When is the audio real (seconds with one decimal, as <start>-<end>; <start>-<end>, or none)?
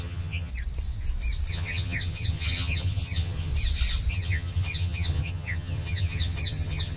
0.5-1.5; 3.5-4.1